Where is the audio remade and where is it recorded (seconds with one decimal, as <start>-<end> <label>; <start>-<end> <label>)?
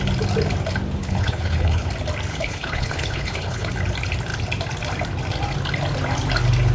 0.0-1.0 recorded; 1.0-1.9 remade; 1.9-2.3 recorded; 2.3-3.7 remade; 3.7-6.7 recorded